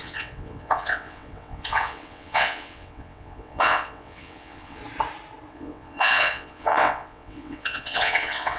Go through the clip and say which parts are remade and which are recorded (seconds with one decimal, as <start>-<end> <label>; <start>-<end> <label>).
0.0-4.8 remade; 4.8-5.5 recorded; 5.5-8.6 remade

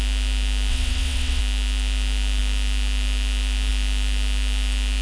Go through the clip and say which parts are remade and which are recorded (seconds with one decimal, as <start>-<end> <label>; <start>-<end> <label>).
0.0-0.7 recorded; 0.7-1.4 remade; 1.4-5.0 recorded